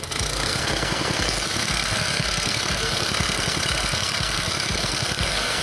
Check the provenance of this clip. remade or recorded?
remade